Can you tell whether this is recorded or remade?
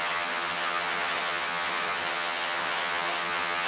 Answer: remade